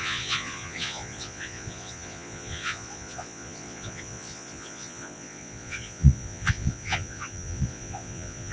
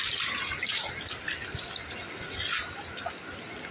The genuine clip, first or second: second